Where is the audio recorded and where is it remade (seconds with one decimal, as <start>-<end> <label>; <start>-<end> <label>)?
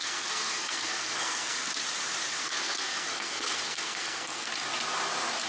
0.0-1.8 remade; 1.8-2.4 recorded; 2.4-4.5 remade; 4.5-5.5 recorded